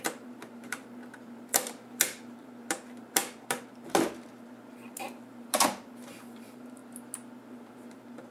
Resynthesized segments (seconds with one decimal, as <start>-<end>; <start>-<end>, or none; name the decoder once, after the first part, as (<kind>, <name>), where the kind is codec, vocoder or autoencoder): 0.0-6.8 (vocoder, BigVGAN v2); 7.5-8.3